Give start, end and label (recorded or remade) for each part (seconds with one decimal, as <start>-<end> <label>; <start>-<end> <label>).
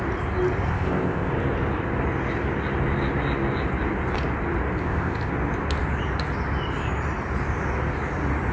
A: 0.0-0.7 recorded; 0.7-1.3 remade; 1.3-4.8 recorded; 4.8-5.3 remade; 5.3-8.5 recorded